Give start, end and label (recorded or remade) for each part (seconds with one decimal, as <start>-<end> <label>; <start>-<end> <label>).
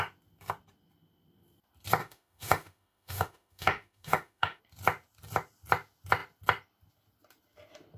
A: 0.0-2.0 recorded; 2.0-4.6 remade; 4.6-8.0 recorded